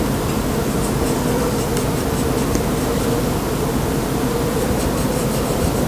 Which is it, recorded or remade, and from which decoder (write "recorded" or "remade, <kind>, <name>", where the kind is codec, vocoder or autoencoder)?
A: recorded